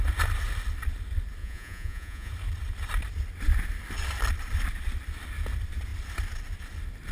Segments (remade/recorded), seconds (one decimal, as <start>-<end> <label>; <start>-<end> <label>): 0.0-1.4 recorded; 1.4-2.3 remade; 2.3-7.1 recorded